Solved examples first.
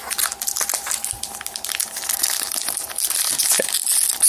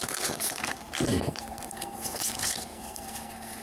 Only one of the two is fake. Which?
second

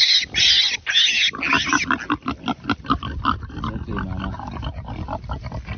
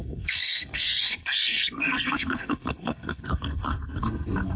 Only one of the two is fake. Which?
second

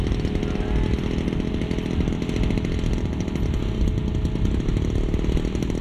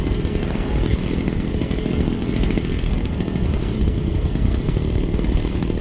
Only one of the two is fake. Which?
second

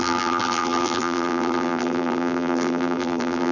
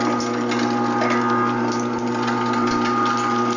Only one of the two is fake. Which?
first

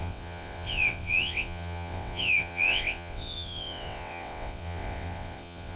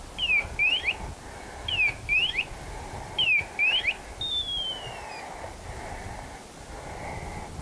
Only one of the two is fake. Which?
first